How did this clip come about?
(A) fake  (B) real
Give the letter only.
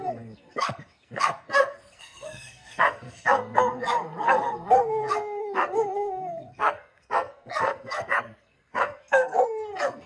A